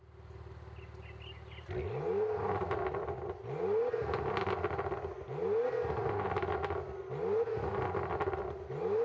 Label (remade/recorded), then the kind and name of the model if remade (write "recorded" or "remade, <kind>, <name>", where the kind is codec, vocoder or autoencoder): recorded